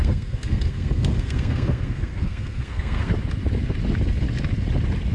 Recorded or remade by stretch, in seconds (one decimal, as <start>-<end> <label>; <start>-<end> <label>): 0.0-3.1 remade; 3.1-5.1 recorded